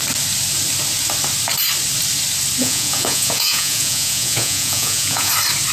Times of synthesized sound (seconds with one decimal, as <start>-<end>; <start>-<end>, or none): 2.6-5.3